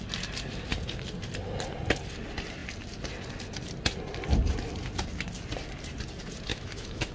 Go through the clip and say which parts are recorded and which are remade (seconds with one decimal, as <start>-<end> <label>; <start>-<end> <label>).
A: 0.0-6.5 recorded; 6.5-7.1 remade